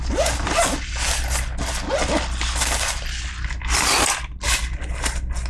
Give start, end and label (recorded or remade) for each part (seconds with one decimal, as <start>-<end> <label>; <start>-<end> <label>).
0.0-5.5 recorded